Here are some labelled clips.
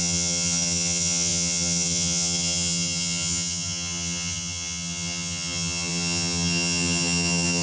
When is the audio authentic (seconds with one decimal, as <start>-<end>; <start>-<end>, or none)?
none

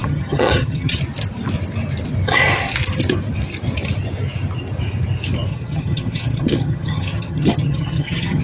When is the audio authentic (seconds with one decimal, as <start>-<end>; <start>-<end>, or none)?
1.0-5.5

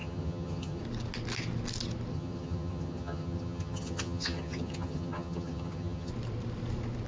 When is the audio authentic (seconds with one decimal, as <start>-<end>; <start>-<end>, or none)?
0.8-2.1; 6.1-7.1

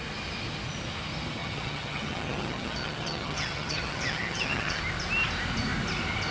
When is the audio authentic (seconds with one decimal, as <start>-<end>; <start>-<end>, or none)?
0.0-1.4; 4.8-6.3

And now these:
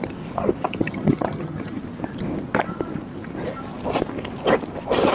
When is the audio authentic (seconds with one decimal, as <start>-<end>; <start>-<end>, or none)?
0.0-0.7; 1.8-5.1